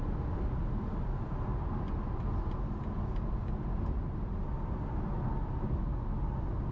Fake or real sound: real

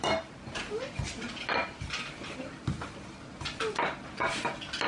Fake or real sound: real